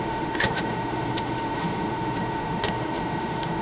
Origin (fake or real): fake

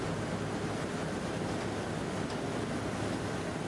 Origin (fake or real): real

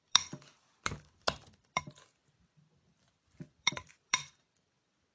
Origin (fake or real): fake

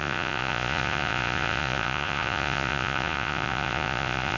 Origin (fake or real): fake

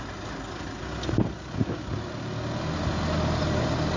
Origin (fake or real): real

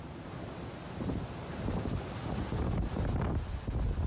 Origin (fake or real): real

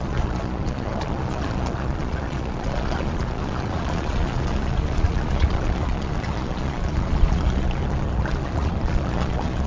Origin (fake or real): fake